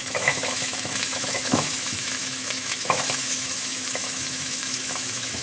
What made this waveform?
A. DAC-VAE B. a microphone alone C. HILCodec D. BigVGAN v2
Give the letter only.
A